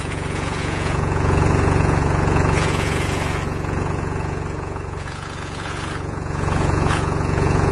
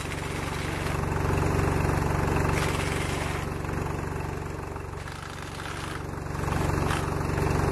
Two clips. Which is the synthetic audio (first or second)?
first